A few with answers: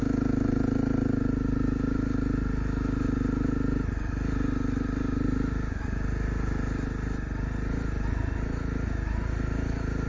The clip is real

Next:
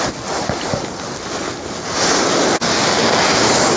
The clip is real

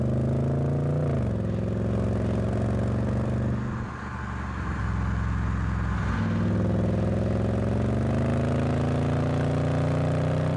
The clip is real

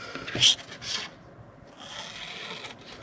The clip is real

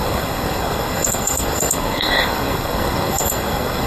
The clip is fake